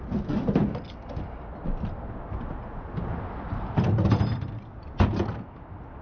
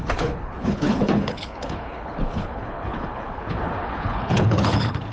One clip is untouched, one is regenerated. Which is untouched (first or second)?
first